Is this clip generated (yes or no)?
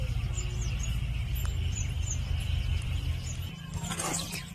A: no